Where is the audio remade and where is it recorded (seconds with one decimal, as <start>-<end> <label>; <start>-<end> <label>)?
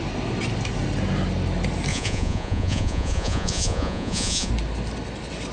0.0-1.9 recorded; 1.9-4.5 remade; 4.5-5.5 recorded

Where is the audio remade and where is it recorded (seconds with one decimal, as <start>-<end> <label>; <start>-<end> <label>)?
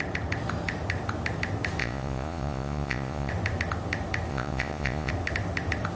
0.0-1.8 recorded; 1.8-3.3 remade; 3.3-4.3 recorded; 4.3-5.1 remade; 5.1-6.0 recorded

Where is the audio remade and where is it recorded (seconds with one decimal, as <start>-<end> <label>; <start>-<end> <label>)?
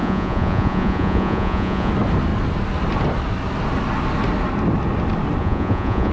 0.0-1.9 remade; 1.9-5.4 recorded; 5.4-6.1 remade